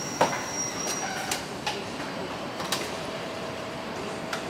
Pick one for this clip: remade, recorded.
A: remade